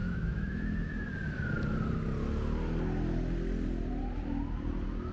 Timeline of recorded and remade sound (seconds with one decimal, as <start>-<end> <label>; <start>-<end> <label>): 0.0-0.9 remade; 0.9-5.1 recorded

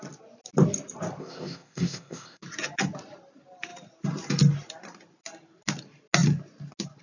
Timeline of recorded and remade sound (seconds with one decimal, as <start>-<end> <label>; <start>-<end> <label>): 0.0-1.2 recorded; 1.2-2.4 remade; 2.4-7.0 recorded

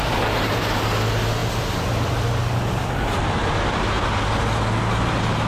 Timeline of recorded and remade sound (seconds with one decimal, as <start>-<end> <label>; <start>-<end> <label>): 0.0-5.5 recorded

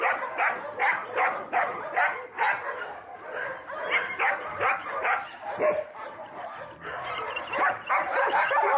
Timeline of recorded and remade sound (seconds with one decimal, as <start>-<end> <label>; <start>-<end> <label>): 0.0-8.8 recorded

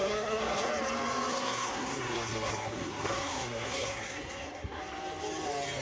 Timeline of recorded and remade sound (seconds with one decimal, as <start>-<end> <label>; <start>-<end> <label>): 0.0-0.7 remade; 0.7-1.3 recorded; 1.3-4.8 remade; 4.8-5.8 recorded

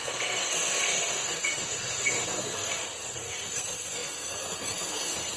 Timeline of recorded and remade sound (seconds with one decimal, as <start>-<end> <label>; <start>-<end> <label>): 0.0-5.4 remade